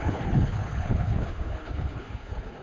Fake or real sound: fake